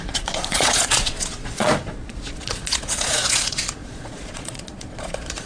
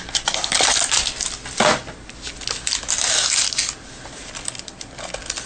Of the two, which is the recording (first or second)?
second